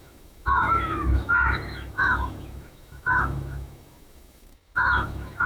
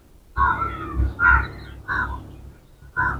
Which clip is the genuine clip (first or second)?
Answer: second